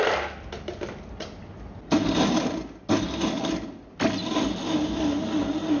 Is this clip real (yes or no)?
yes